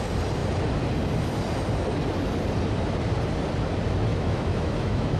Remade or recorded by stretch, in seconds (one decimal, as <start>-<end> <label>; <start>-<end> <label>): 0.0-4.1 recorded; 4.1-5.2 remade